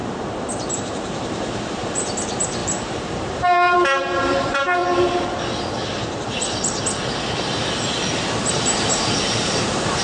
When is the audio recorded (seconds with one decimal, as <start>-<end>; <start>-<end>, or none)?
4.8-8.5